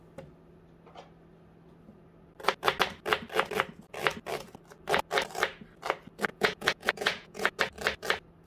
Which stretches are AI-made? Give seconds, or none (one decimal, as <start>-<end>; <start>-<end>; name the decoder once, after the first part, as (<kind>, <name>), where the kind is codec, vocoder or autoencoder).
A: 6.3-7.6 (vocoder, Vocos)

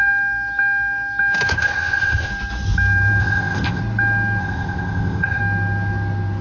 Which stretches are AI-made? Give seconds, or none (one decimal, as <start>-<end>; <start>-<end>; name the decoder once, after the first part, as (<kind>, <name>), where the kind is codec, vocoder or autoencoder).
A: 1.5-2.3 (codec, ZipCodec); 3.2-3.8; 4.4-5.4

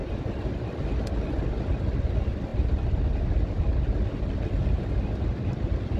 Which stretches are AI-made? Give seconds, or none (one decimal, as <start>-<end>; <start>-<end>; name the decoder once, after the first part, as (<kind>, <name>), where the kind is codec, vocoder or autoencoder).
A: none

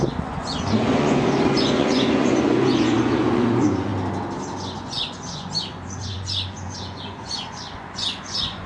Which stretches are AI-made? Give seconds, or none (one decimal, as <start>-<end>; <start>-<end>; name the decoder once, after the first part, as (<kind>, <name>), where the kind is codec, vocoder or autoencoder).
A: 0.0-3.9 (vocoder, Vocos); 4.6-8.7

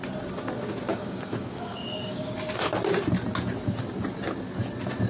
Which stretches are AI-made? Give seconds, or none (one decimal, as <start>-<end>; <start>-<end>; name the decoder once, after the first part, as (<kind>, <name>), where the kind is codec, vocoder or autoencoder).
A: 0.9-2.3 (codec, DAC)

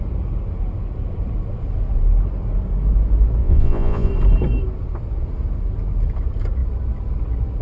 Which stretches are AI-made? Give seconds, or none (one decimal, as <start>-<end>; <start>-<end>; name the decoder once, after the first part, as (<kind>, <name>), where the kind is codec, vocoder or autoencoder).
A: 3.4-4.1 (vocoder, Vocos)

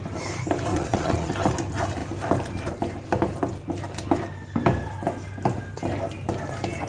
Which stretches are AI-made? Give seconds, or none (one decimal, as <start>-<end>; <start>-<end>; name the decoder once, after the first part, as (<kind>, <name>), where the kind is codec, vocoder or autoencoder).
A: 0.7-1.3 (vocoder, Vocos)